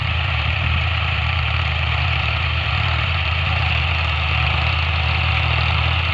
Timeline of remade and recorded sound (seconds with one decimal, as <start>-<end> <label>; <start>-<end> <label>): 0.0-3.7 remade; 3.7-6.1 recorded

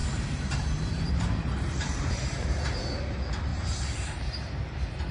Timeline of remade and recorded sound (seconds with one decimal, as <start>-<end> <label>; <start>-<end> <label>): 0.0-2.8 remade; 2.8-3.5 recorded; 3.5-4.6 remade; 4.6-5.1 recorded

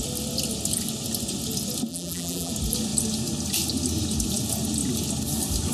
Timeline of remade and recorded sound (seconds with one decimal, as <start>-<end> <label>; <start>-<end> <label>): 0.0-1.9 recorded; 1.9-2.5 remade; 2.5-5.7 recorded